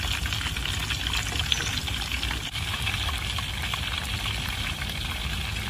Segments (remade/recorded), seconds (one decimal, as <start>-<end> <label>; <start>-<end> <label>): 0.0-5.7 recorded